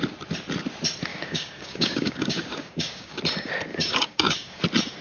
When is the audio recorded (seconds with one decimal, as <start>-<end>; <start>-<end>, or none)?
0.0-1.1; 3.2-3.7; 4.6-5.0